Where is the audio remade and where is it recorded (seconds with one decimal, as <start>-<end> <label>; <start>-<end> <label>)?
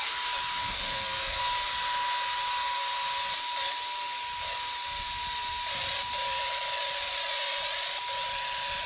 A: 0.0-0.6 recorded; 0.6-1.4 remade; 1.4-8.9 recorded